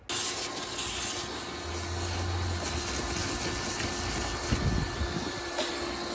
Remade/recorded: recorded